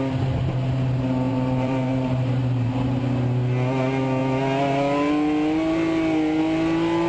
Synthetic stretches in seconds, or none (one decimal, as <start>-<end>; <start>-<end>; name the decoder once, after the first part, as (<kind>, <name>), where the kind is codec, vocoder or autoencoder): 1.3-3.0 (vocoder, BigVGAN v2)